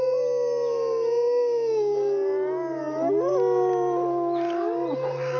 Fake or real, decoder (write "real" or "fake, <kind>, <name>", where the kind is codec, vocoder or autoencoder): real